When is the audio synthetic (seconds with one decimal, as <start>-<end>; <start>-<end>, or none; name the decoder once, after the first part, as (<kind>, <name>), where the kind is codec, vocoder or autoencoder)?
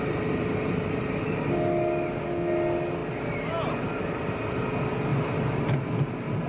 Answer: 5.1-5.8 (vocoder, BigVGAN v2)